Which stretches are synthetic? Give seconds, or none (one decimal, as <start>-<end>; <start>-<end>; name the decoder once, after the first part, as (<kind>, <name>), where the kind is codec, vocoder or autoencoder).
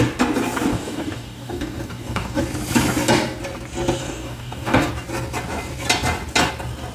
0.7-2.4 (codec, DAC); 4.0-4.9